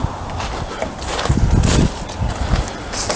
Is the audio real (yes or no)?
yes